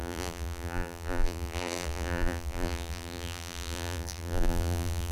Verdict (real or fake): fake